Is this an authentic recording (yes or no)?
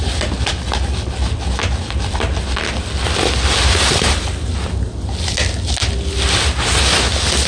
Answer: yes